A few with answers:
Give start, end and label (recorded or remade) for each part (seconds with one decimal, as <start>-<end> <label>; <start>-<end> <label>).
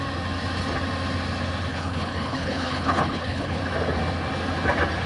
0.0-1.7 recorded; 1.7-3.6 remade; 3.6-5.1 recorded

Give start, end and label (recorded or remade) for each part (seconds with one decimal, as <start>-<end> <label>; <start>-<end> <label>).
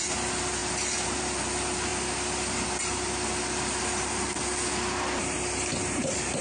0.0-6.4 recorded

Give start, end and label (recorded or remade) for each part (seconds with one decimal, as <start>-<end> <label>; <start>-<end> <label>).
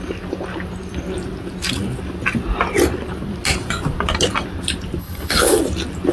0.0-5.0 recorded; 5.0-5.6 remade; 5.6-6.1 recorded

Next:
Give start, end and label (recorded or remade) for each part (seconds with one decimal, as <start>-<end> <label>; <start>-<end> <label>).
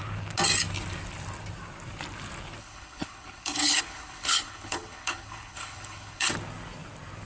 0.0-2.6 recorded; 2.6-6.3 remade; 6.3-7.3 recorded